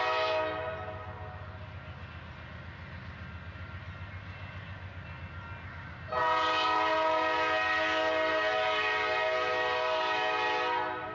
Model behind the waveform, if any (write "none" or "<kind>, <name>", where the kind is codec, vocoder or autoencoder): none